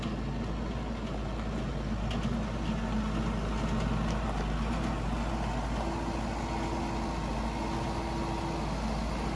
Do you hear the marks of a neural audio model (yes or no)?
no